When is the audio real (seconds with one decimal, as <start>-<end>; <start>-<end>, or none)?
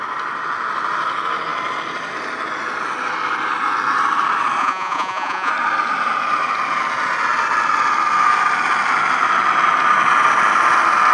0.0-4.6; 5.5-11.1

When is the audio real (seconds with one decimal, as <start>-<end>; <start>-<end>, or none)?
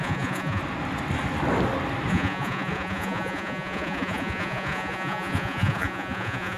0.6-2.1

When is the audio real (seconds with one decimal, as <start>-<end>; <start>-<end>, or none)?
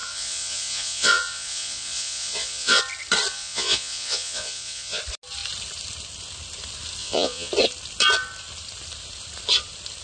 2.8-3.3; 5.0-7.0; 7.5-10.0